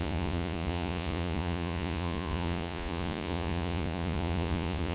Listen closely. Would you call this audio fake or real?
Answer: fake